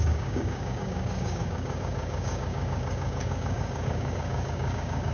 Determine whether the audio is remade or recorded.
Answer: remade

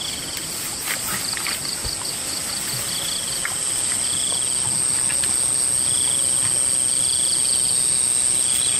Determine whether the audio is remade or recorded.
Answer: recorded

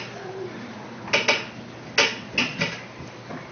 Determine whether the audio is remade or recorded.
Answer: recorded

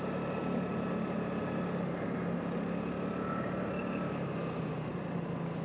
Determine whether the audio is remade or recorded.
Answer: recorded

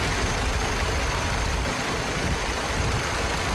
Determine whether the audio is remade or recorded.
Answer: recorded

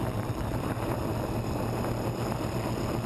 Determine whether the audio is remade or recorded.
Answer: recorded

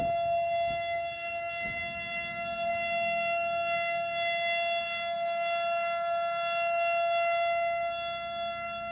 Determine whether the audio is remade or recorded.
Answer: recorded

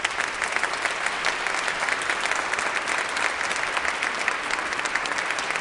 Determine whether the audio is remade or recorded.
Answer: recorded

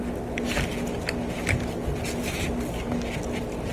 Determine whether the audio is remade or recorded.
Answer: recorded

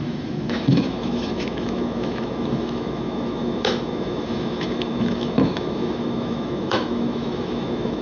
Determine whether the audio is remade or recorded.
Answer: remade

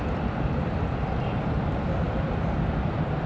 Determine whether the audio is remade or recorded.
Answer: remade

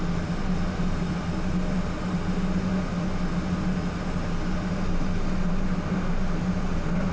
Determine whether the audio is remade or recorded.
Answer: recorded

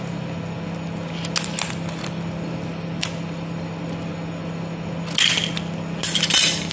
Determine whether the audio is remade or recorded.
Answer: recorded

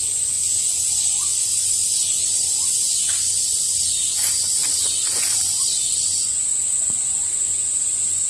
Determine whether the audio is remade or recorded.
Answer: remade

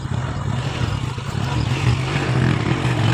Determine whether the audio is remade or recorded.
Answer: recorded